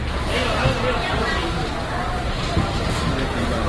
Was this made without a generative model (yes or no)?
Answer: yes